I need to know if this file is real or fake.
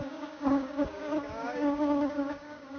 fake